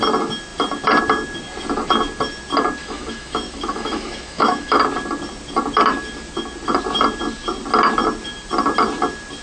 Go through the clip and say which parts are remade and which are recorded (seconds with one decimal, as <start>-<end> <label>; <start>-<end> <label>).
0.0-2.8 recorded; 2.8-4.8 remade; 4.8-9.4 recorded